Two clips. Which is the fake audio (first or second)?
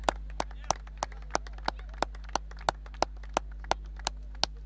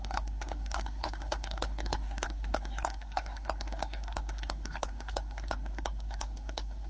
second